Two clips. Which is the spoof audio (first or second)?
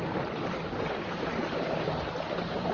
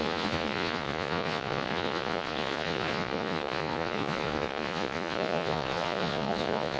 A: second